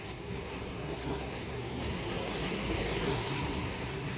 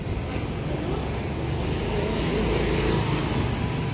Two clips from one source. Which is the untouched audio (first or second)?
second